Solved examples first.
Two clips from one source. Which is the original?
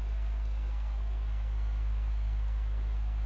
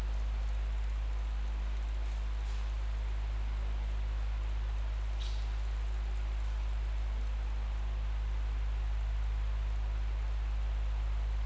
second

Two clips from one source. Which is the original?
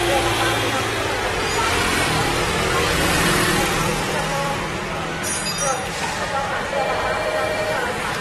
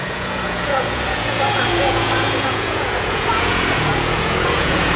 first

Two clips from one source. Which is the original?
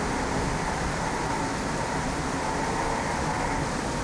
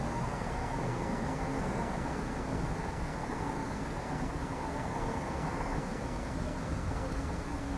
first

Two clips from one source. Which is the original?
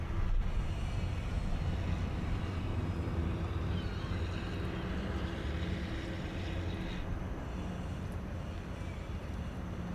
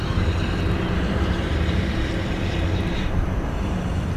first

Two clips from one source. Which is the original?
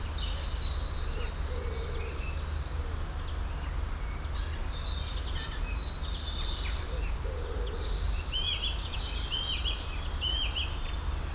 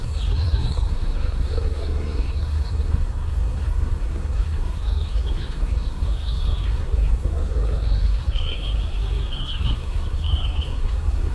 first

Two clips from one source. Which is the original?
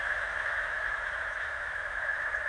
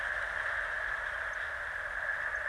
second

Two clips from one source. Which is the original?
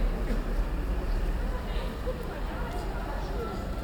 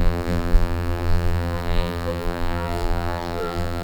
first